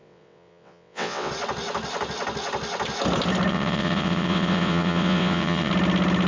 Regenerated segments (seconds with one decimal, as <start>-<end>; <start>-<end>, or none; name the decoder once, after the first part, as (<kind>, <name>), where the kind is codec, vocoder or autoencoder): 0.0-1.3 (vocoder, WaveNeXt); 3.5-5.7